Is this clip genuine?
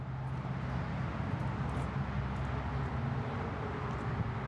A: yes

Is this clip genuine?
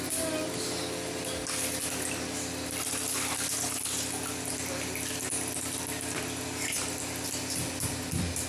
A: yes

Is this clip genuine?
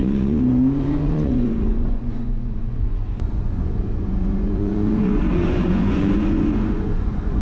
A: no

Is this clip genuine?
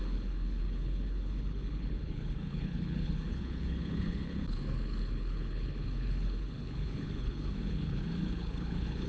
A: no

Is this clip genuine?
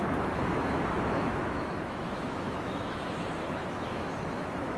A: no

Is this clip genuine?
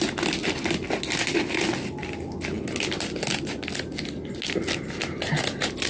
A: yes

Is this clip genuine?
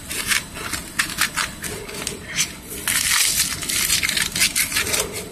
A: yes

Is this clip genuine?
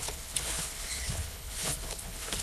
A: no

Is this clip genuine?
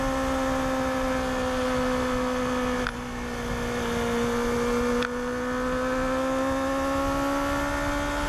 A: yes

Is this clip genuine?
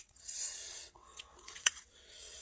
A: no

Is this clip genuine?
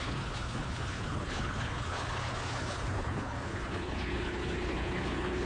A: no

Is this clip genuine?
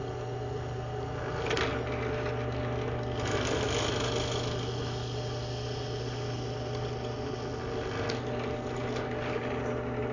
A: yes